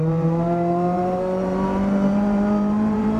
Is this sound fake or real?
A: fake